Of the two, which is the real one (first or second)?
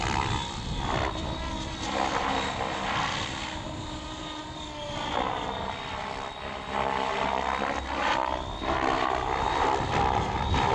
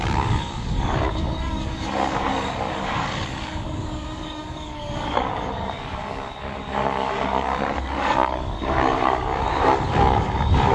first